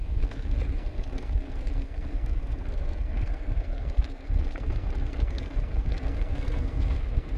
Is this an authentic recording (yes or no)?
no